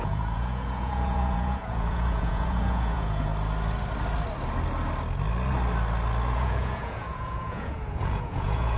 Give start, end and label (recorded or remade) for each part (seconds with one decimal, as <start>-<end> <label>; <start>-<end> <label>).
0.0-3.3 remade; 3.3-6.3 recorded; 6.3-8.8 remade